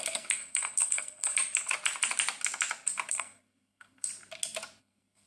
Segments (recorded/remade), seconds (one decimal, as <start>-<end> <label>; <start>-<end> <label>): 0.0-1.3 remade; 1.3-3.1 recorded; 3.1-4.1 remade; 4.1-4.8 recorded; 4.8-5.3 remade